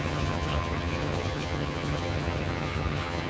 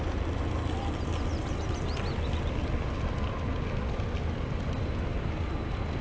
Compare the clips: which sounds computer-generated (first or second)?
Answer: first